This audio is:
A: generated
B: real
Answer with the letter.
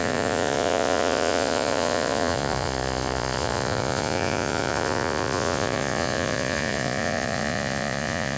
A